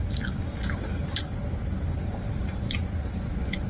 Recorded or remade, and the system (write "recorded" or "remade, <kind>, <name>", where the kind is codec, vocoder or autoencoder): recorded